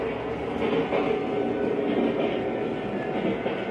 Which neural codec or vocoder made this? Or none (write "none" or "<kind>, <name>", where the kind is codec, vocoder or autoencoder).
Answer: none